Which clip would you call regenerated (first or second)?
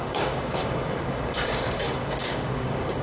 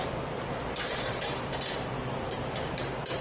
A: first